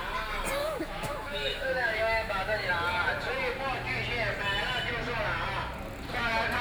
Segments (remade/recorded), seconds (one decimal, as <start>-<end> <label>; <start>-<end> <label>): 0.0-0.6 recorded; 0.6-2.7 remade; 2.7-6.6 recorded